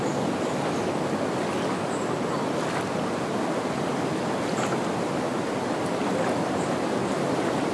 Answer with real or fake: real